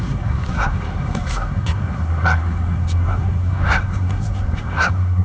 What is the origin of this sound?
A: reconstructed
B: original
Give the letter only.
A